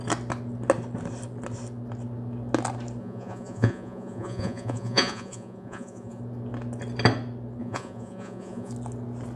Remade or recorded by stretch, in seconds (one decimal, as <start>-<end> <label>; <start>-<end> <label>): 0.0-3.0 recorded; 3.0-6.2 remade; 6.2-7.6 recorded; 7.6-8.7 remade; 8.7-9.4 recorded